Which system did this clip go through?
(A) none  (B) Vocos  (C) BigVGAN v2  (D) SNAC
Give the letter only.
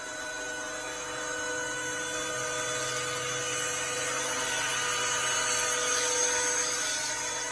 A